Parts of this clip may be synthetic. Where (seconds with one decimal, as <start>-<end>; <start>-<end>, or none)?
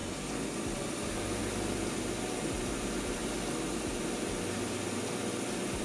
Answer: none